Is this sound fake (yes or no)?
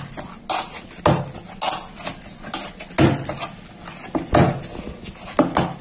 no